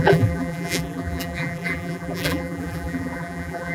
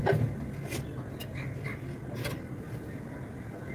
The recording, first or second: second